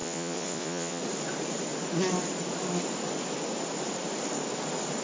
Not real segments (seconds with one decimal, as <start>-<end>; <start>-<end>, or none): 0.0-1.0